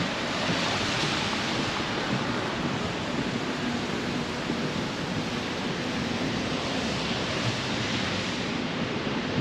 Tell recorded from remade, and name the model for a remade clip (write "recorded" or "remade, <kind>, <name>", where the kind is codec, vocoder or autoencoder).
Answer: remade, vocoder, BigVGAN v2